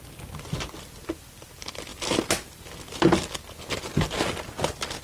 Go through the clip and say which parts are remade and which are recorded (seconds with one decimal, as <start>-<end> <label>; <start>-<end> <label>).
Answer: 0.0-5.0 recorded